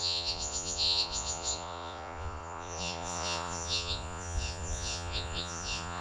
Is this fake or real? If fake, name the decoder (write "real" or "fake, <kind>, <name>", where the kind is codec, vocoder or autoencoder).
fake, vocoder, Vocos